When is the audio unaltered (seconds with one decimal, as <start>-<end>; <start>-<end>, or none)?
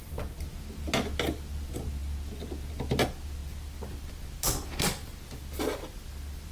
0.0-6.5